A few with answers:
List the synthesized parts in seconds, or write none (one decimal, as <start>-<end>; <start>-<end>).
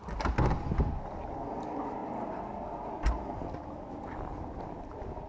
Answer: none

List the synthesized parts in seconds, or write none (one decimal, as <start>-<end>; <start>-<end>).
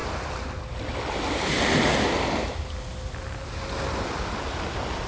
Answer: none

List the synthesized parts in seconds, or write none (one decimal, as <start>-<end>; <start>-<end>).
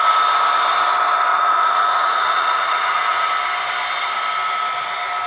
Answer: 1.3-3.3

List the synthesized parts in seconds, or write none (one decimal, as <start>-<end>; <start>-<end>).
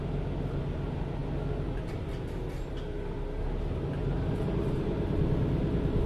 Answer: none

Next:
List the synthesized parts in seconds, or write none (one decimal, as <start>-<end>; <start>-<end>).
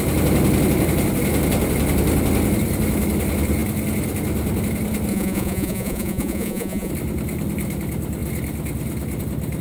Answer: 5.1-6.9